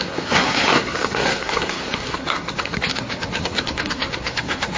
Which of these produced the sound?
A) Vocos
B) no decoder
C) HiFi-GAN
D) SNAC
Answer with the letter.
D